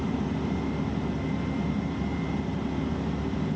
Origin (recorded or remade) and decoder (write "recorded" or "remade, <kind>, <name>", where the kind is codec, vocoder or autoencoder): recorded